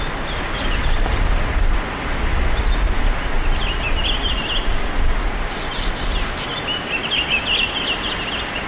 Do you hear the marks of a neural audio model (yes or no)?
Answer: no